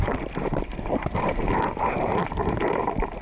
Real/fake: fake